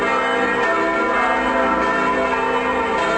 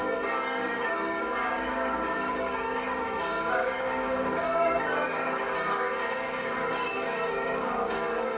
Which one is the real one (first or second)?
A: first